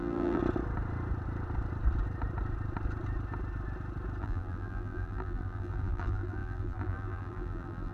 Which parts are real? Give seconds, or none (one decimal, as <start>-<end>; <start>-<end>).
0.4-4.2